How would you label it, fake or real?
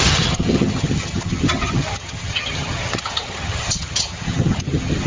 fake